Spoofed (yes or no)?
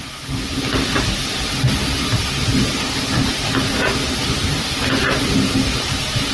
no